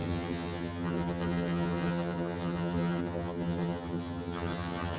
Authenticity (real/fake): fake